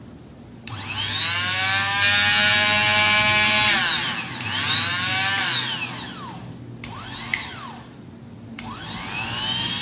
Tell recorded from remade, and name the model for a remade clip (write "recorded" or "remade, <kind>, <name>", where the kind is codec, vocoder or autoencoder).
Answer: recorded